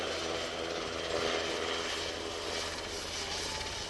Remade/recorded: recorded